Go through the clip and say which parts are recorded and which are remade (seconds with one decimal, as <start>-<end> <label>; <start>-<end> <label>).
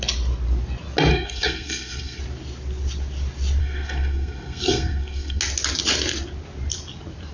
0.0-1.1 recorded; 1.1-2.2 remade; 2.2-3.6 recorded; 3.6-5.4 remade; 5.4-7.3 recorded